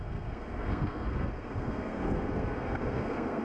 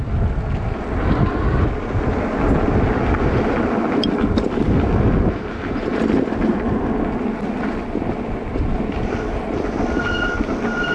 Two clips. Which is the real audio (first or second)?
second